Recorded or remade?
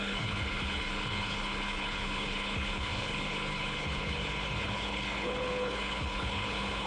remade